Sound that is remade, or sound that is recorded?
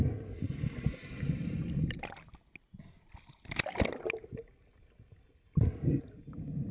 recorded